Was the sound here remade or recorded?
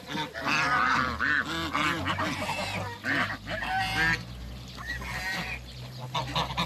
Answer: recorded